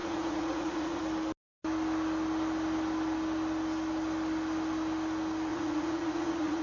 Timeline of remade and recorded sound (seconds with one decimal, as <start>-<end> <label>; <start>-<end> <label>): 0.0-1.0 remade; 1.0-5.5 recorded; 5.5-6.6 remade